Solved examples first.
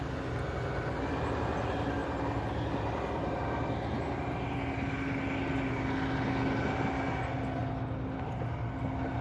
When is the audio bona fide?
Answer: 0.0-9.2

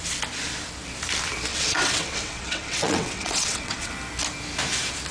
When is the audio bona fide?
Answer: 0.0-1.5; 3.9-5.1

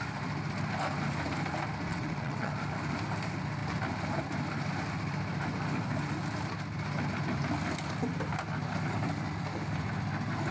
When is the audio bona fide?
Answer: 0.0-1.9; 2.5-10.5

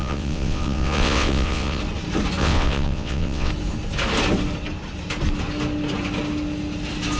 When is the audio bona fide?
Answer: 1.8-2.4; 3.5-7.2

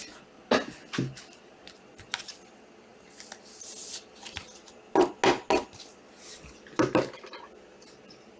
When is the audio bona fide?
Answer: 0.0-8.4

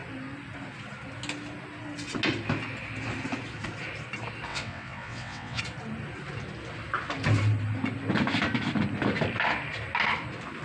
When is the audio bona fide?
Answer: 0.0-4.5; 5.6-10.6

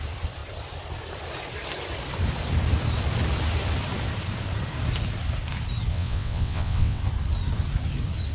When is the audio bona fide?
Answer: 0.0-5.9; 7.0-8.3